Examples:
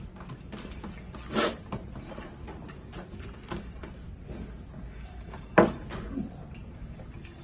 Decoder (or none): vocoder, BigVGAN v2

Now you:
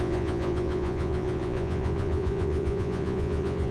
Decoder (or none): vocoder, Vocos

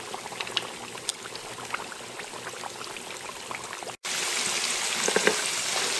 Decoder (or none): none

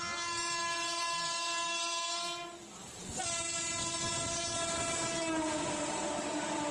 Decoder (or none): vocoder, BigVGAN v2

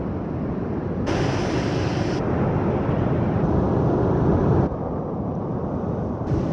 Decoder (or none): none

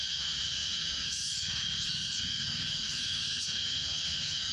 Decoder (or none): codec, SNAC